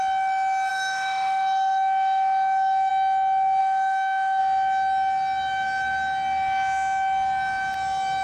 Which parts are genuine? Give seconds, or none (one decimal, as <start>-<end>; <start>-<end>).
0.0-0.7; 2.9-3.6; 4.4-8.2